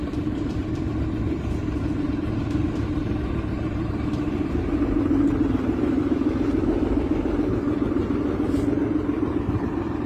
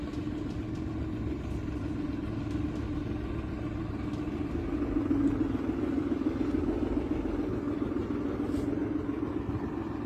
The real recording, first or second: second